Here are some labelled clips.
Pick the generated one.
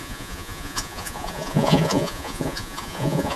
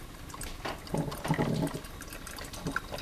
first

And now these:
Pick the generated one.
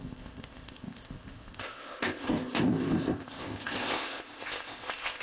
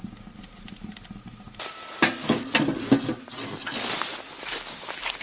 first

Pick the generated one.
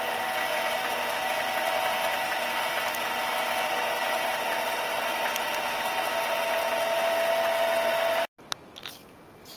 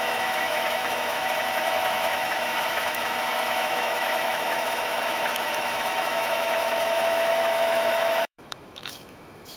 second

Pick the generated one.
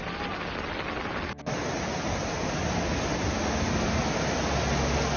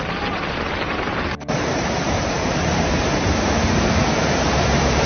second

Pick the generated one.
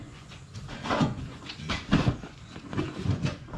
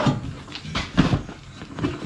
first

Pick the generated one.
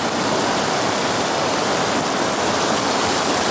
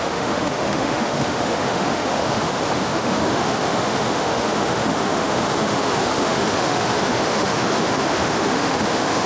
second